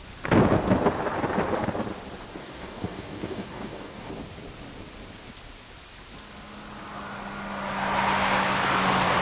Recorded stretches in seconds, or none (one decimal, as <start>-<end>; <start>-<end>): 0.0-2.4; 4.1-9.2